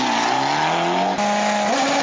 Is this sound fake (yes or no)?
no